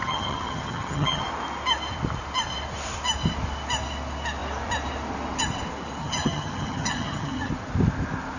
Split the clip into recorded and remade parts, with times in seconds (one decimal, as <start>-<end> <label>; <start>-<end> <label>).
0.0-1.2 remade; 1.2-6.0 recorded; 6.0-7.5 remade; 7.5-8.4 recorded